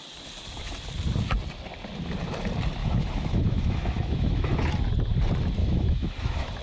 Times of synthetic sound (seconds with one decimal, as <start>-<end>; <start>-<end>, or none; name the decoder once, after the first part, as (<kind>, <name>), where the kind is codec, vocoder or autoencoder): 2.8-4.7 (autoencoder, DAC-VAE); 5.6-6.6